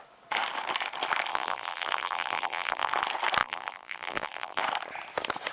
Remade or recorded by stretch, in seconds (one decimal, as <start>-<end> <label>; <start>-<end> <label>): 0.0-1.3 recorded; 1.3-2.9 remade; 2.9-3.4 recorded; 3.4-4.6 remade; 4.6-5.5 recorded